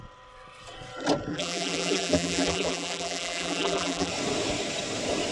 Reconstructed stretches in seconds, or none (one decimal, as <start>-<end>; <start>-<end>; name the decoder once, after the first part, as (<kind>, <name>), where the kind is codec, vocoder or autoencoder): 1.3-4.1 (vocoder, BigVGAN v2)